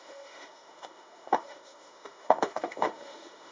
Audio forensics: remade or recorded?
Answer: remade